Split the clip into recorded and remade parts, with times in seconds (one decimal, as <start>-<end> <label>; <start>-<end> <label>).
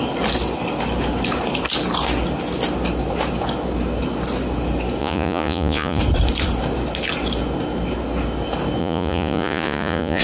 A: 0.0-5.0 recorded; 5.0-6.0 remade; 6.0-8.8 recorded; 8.8-10.2 remade